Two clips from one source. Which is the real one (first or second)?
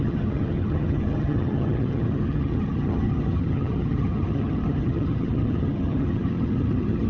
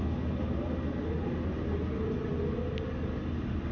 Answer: second